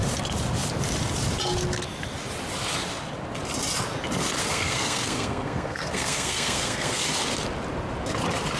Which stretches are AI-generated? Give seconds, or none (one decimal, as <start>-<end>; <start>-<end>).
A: 4.4-7.0